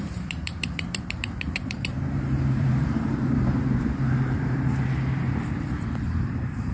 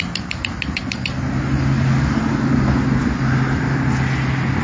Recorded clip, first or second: second